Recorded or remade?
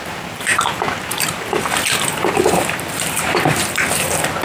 remade